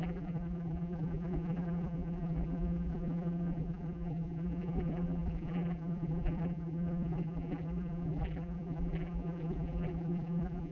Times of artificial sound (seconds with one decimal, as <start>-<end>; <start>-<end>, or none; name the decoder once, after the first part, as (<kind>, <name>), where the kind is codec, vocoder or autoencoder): 0.0-10.7 (vocoder, BigVGAN v2)